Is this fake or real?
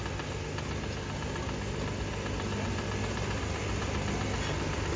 real